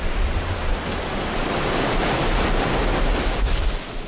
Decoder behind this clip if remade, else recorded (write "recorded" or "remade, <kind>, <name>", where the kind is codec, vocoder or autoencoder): recorded